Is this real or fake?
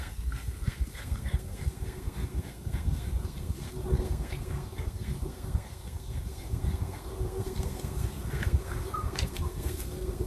fake